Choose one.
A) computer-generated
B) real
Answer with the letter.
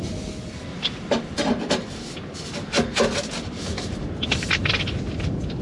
B